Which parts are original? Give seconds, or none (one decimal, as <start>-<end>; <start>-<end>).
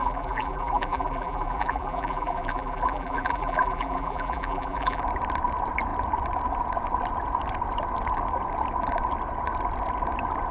5.0-10.5